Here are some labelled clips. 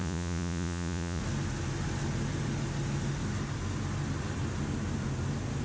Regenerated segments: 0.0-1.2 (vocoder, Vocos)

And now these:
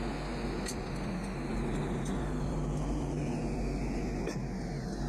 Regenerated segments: 1.5-3.4 (vocoder, BigVGAN v2)

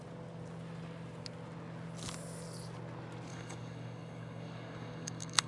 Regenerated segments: 3.3-5.5 (codec, DAC)

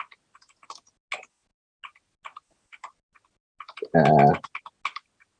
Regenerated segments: none

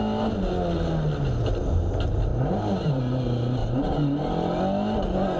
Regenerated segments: 2.3-3.0 (vocoder, BigVGAN v2); 3.6-4.6